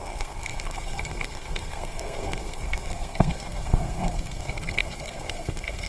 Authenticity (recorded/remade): remade